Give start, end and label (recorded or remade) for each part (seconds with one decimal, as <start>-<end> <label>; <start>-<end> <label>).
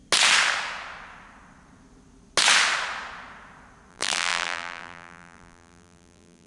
0.0-3.9 recorded; 3.9-6.5 remade